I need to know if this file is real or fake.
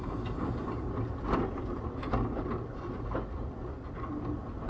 real